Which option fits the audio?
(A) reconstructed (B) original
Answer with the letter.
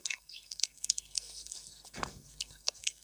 A